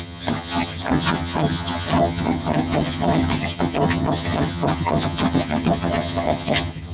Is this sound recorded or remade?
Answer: remade